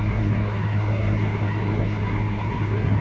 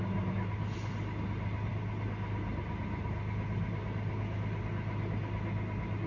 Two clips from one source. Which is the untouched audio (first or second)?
second